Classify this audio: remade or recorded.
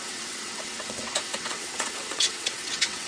remade